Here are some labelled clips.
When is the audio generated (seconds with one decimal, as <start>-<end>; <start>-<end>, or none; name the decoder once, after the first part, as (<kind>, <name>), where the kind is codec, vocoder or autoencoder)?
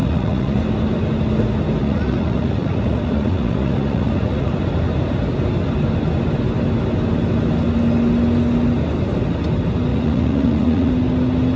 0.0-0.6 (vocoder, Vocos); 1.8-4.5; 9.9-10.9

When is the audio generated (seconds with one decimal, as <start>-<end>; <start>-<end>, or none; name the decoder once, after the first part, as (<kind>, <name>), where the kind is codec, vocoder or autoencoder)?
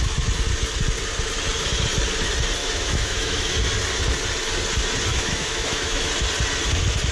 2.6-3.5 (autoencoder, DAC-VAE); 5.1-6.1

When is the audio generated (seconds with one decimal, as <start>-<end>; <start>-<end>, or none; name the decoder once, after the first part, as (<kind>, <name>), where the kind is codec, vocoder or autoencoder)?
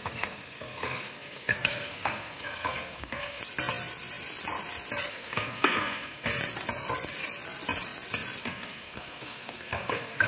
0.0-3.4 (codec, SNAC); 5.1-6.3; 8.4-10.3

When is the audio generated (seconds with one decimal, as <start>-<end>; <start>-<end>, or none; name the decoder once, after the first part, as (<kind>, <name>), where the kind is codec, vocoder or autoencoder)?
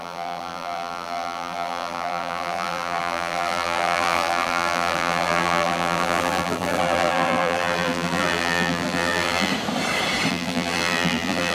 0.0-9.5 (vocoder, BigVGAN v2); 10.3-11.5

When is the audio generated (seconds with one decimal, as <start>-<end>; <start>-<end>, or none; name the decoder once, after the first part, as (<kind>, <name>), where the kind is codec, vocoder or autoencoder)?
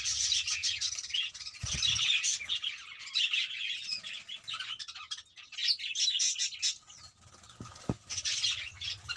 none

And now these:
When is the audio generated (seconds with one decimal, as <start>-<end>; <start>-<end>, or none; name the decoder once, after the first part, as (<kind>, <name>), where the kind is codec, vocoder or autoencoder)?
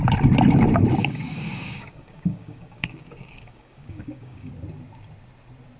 1.0-4.5 (codec, DAC)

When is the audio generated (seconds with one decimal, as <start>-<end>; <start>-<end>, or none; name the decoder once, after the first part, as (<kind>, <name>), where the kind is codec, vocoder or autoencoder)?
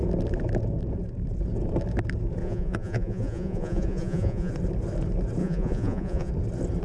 2.4-4.5 (vocoder, Vocos); 5.4-6.3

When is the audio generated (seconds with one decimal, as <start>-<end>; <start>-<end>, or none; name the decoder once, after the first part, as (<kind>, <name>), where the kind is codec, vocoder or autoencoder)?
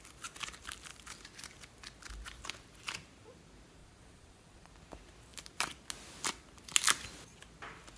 3.8-4.7 (vocoder, Vocos)